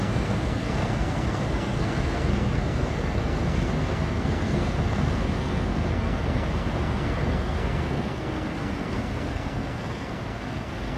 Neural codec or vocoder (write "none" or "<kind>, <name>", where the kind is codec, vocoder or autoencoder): codec, SNAC